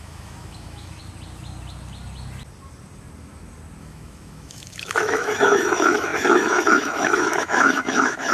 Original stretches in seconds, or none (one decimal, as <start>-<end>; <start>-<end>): 1.0-3.8